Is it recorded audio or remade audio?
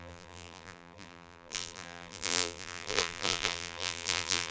remade